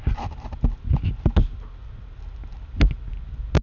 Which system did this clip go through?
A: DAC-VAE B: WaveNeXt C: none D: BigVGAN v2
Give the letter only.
C